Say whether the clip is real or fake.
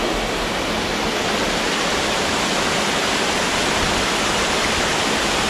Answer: real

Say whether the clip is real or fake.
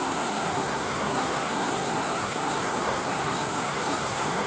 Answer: fake